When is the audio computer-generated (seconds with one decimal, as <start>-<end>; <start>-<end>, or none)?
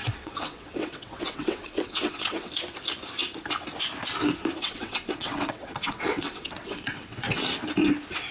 0.0-2.5; 4.6-7.5